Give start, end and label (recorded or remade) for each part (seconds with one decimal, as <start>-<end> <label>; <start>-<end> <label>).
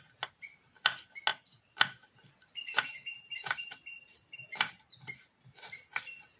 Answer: 0.0-1.3 recorded; 1.3-2.1 remade; 2.1-2.6 recorded; 2.6-5.2 remade; 5.2-6.4 recorded